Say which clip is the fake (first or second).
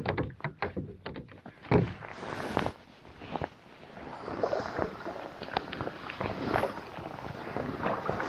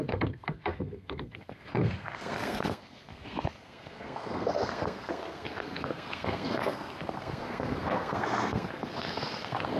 second